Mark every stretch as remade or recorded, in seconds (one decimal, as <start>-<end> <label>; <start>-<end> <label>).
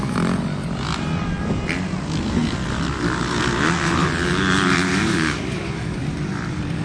0.0-4.9 recorded; 4.9-6.0 remade; 6.0-6.8 recorded